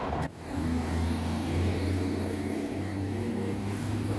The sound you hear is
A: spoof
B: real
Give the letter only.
A